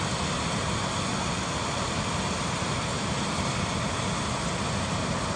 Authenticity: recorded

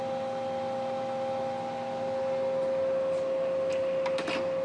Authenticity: recorded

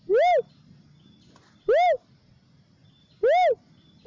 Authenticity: recorded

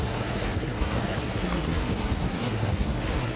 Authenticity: remade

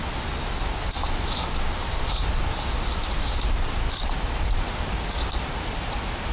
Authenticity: recorded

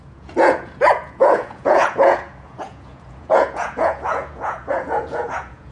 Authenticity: remade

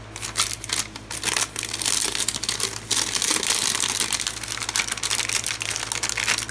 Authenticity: recorded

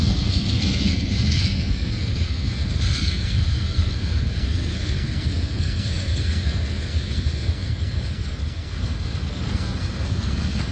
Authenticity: remade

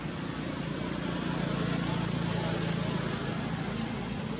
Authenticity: recorded